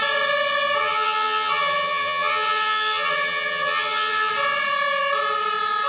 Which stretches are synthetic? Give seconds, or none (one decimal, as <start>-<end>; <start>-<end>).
0.8-4.3